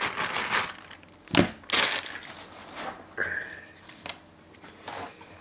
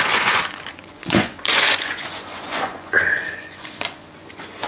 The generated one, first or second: second